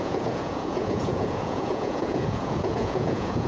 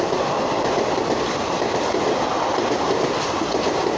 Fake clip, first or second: first